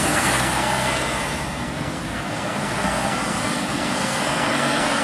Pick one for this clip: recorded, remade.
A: remade